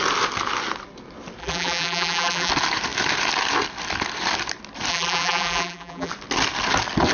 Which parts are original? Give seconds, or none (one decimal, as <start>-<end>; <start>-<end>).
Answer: 0.0-1.4; 2.5-4.9; 6.1-7.1